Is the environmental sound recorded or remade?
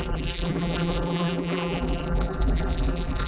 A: remade